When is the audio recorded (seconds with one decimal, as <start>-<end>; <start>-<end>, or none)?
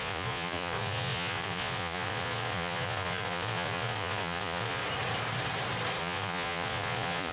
4.8-6.0